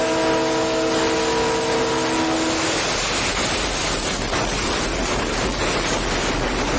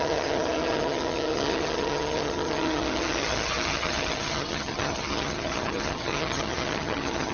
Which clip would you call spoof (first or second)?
second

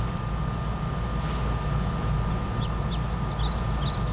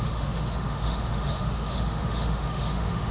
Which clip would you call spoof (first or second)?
second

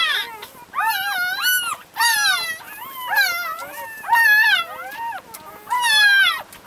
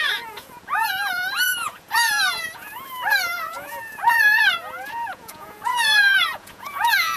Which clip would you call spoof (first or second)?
second